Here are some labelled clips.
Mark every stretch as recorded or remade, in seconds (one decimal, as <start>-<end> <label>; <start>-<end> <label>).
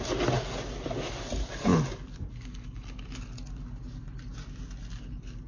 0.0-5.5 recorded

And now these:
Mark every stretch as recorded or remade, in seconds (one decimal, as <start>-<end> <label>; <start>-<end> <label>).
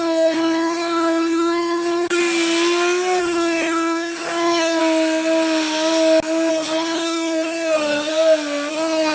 0.0-2.2 remade; 2.2-3.2 recorded; 3.2-4.8 remade; 4.8-6.5 recorded; 6.5-8.1 remade; 8.1-8.7 recorded; 8.7-9.1 remade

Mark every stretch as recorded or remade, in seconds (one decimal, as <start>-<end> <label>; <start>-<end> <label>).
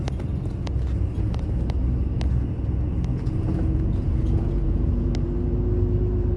0.0-3.1 recorded; 3.1-5.1 remade; 5.1-6.4 recorded